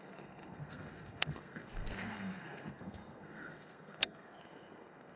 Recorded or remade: remade